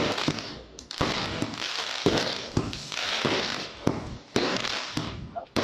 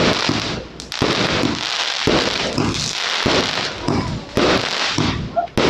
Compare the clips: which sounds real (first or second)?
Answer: second